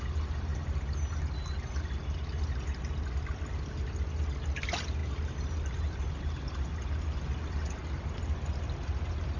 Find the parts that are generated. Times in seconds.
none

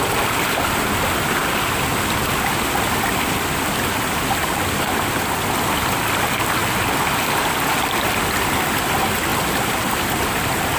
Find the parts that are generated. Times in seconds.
9.3-10.8 (vocoder, BigVGAN v2)

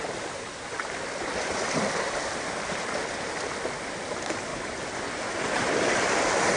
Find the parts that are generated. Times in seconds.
0.0-6.6 (vocoder, BigVGAN v2)

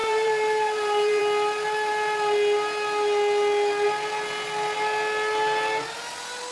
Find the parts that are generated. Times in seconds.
0.0-1.2 (vocoder, BigVGAN v2)

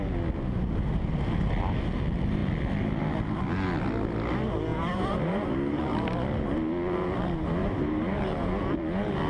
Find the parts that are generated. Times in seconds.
4.7-5.8 (vocoder, BigVGAN v2); 7.6-8.5

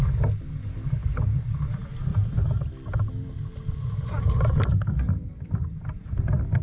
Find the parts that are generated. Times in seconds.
2.1-6.1 (vocoder, BigVGAN v2)

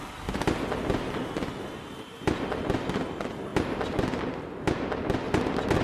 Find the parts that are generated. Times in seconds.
none

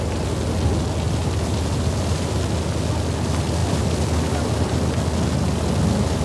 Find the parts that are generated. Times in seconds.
1.2-2.3 (vocoder, BigVGAN v2); 3.6-4.7